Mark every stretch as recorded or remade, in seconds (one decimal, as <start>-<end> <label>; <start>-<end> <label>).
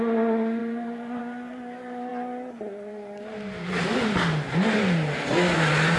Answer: 0.0-6.0 recorded